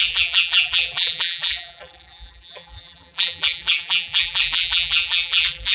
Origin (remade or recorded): remade